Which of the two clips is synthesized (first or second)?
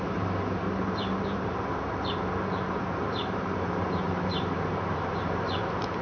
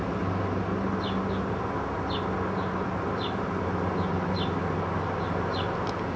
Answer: first